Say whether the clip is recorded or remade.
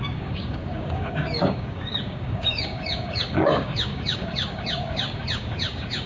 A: remade